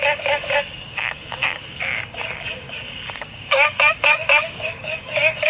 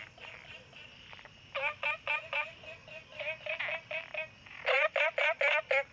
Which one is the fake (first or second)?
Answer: first